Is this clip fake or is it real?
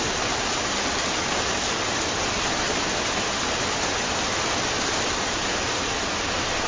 real